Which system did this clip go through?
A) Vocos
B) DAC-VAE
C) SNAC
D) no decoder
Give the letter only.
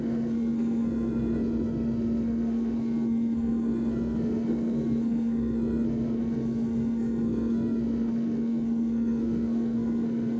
C